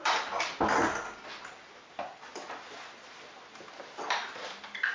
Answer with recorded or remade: remade